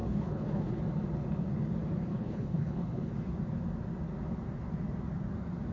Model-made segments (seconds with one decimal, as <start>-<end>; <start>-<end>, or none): 0.0-0.8; 2.1-3.1